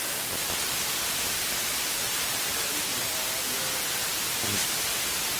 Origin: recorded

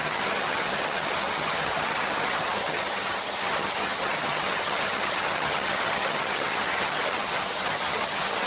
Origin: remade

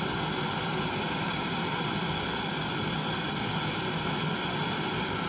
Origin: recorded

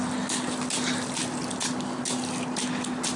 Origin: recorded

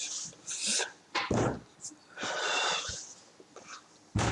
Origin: recorded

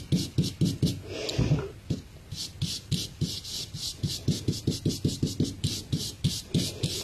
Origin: recorded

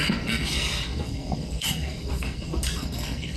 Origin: remade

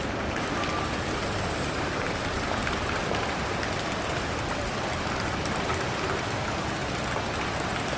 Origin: recorded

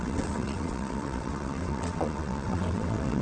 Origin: remade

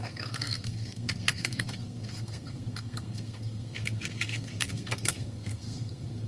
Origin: remade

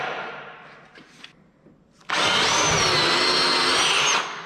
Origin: recorded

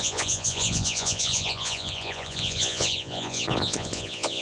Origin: remade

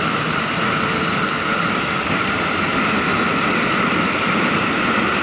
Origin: remade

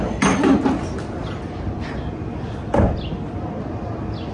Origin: recorded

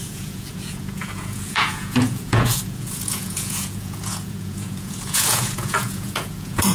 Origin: remade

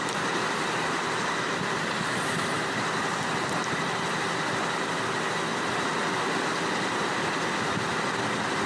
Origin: recorded